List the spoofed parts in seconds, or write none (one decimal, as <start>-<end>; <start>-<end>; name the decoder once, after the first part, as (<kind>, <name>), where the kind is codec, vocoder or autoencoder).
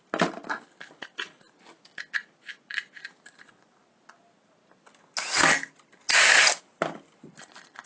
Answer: none